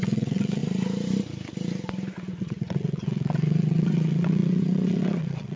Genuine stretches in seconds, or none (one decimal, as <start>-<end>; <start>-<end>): 0.6-2.4